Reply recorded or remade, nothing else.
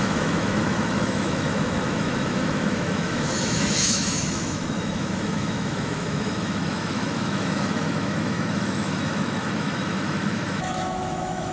remade